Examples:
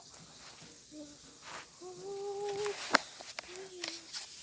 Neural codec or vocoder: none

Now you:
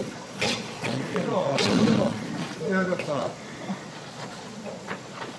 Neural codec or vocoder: vocoder, Vocos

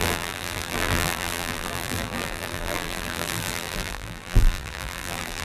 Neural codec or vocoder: vocoder, BigVGAN v2